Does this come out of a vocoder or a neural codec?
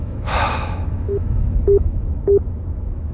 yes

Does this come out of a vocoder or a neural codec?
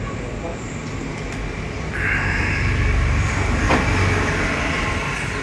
no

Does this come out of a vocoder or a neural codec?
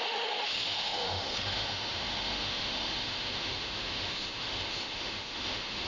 yes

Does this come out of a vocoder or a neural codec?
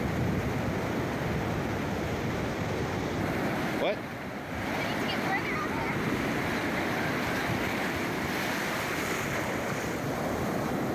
no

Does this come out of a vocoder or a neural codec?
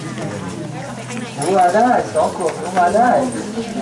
no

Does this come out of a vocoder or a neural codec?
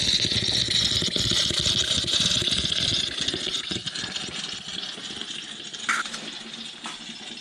no